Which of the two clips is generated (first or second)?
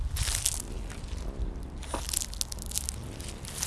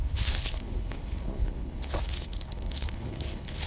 second